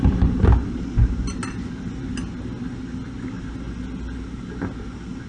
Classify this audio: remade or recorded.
recorded